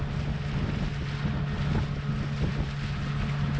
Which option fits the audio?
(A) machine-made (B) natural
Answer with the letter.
B